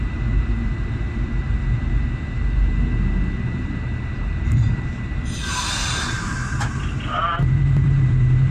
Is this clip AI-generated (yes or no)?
yes